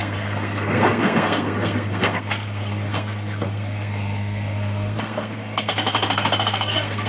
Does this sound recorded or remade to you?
remade